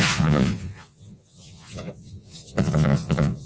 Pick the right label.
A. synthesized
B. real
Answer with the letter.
A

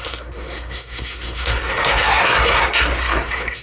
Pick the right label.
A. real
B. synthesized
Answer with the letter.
B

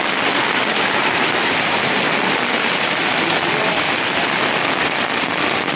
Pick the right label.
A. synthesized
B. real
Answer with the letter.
B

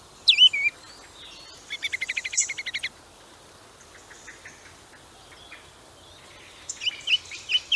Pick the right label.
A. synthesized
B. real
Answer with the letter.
B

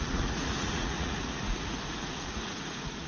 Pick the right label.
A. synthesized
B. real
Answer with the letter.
A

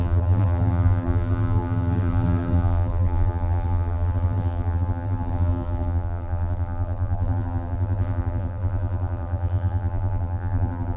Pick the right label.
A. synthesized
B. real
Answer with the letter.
A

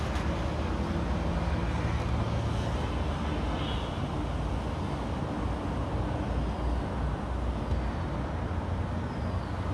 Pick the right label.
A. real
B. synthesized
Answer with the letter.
A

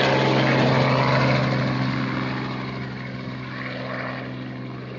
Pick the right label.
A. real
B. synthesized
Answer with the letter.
A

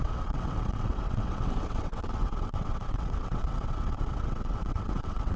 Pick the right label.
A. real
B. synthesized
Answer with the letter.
B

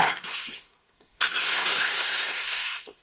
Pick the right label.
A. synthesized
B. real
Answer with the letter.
A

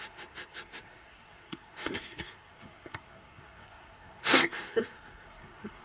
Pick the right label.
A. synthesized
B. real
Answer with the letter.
A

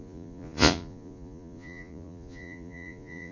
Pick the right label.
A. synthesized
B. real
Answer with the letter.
A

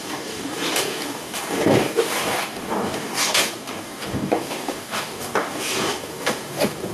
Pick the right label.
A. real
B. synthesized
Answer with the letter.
B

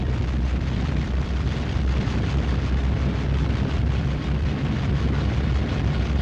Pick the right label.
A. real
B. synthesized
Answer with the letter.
B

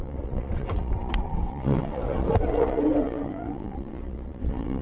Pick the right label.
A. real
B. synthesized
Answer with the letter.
B